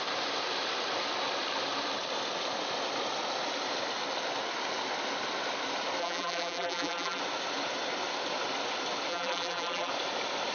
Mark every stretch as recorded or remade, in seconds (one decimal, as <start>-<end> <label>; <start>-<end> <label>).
0.0-6.0 recorded; 6.0-7.2 remade; 7.2-9.1 recorded; 9.1-9.9 remade; 9.9-10.5 recorded